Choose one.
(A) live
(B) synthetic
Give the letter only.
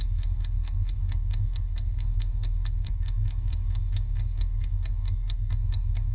B